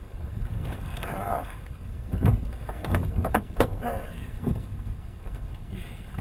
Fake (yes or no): yes